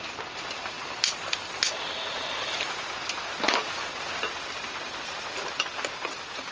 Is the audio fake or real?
real